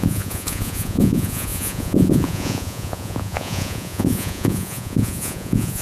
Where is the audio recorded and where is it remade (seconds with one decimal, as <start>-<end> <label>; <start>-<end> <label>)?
0.0-5.8 remade